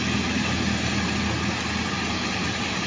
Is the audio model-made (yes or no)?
no